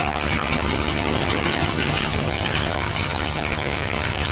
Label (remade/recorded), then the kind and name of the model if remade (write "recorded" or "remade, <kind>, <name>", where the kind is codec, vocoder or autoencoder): remade, vocoder, HiFi-GAN